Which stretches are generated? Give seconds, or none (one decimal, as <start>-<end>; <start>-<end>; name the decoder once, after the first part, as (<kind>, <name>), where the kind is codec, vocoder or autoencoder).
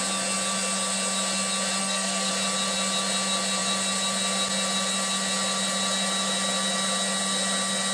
1.8-2.3 (codec, SNAC)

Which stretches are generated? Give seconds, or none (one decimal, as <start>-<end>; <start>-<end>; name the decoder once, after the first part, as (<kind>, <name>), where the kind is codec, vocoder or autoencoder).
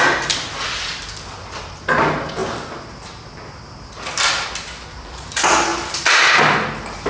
none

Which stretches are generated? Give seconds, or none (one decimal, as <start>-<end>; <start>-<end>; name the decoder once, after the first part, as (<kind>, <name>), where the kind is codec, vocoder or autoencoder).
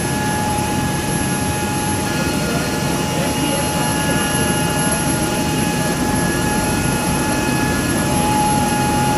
0.5-1.1 (vocoder, BigVGAN v2); 1.9-2.5; 3.9-8.7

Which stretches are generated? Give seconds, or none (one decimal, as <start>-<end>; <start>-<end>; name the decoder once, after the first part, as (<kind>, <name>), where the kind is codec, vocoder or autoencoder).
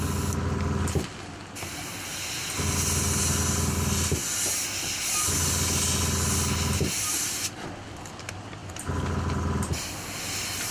none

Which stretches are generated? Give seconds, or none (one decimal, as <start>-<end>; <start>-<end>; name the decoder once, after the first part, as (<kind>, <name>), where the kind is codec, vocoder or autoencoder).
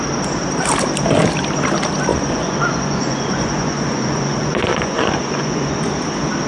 2.1-5.9 (vocoder, Vocos)